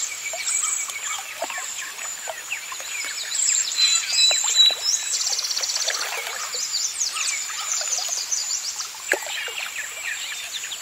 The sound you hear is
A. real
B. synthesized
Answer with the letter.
B